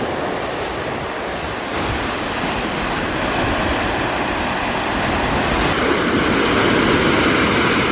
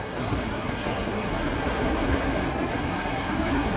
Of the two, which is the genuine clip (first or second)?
first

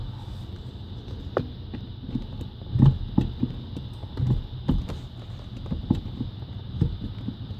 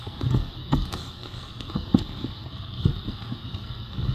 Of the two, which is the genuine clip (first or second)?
first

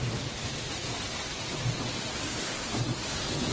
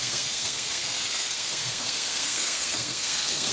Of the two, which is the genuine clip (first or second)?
first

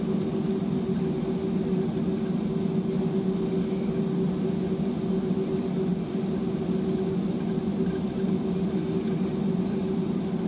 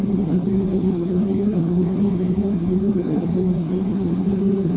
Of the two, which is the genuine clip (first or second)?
first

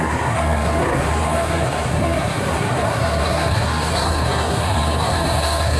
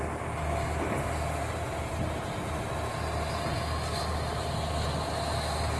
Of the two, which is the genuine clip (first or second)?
second